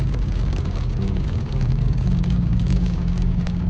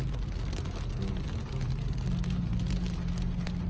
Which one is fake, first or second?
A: first